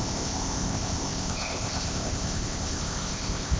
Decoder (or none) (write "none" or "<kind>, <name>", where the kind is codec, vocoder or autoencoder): codec, ZipCodec